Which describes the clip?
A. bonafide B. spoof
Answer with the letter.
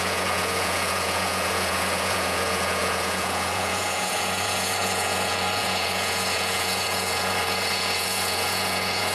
B